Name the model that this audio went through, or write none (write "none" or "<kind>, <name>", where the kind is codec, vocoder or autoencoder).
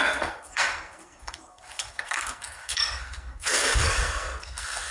codec, SNAC